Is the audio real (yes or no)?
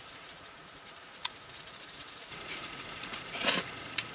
no